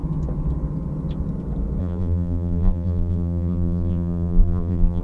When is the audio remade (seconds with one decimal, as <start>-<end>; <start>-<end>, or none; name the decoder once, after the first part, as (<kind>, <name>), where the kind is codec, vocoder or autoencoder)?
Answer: 1.8-5.0 (vocoder, BigVGAN v2)